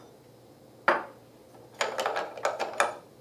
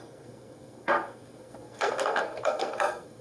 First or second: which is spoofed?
second